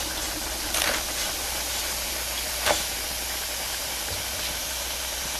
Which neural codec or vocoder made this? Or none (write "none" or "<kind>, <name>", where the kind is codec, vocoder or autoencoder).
vocoder, BigVGAN v2